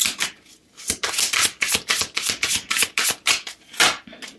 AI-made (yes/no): no